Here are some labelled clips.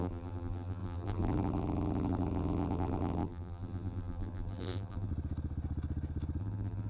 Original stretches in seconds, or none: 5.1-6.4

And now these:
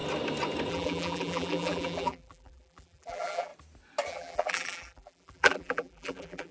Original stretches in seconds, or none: 0.0-0.7; 3.5-4.1

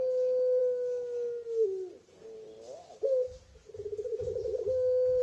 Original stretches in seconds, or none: 0.0-5.2

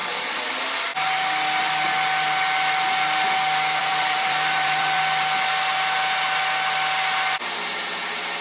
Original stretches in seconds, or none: 0.0-3.8; 5.0-8.4

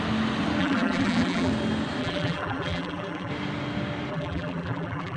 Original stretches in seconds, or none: 0.0-0.6; 1.5-2.0; 3.3-4.1

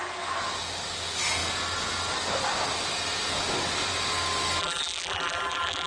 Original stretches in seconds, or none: 0.0-4.6